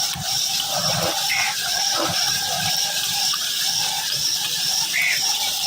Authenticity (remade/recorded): remade